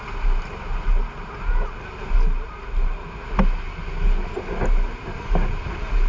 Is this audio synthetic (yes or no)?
no